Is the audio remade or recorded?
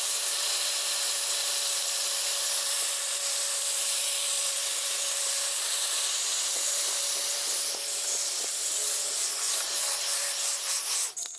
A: recorded